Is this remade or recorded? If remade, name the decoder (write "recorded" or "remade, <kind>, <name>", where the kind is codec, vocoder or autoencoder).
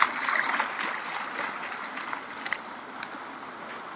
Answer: recorded